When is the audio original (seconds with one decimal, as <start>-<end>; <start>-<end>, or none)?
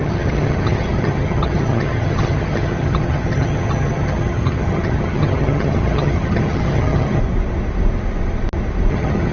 7.2-8.9